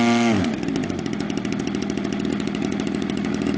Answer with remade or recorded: recorded